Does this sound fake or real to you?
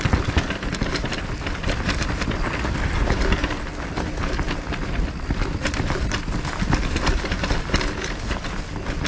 real